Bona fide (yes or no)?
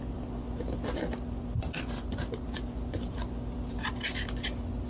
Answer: yes